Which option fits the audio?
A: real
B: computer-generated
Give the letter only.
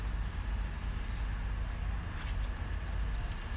A